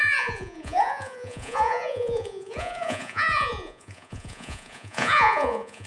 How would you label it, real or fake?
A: fake